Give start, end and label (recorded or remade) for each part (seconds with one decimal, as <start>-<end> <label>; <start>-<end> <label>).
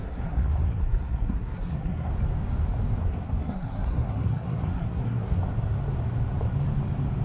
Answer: 0.0-2.1 remade; 2.1-3.0 recorded; 3.0-5.4 remade; 5.4-7.2 recorded